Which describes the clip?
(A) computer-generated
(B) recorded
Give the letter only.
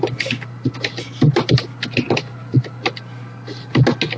B